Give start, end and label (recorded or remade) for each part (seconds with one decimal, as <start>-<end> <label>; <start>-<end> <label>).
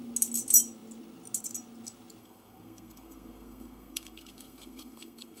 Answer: 0.0-2.2 recorded; 2.2-5.4 remade